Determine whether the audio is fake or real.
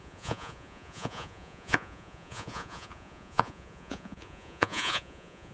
fake